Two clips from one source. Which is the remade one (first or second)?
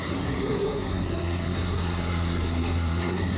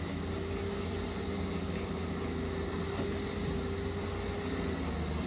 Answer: first